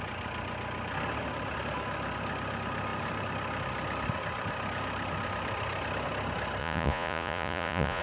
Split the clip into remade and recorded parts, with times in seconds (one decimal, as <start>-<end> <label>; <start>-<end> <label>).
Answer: 0.0-6.6 recorded; 6.6-8.0 remade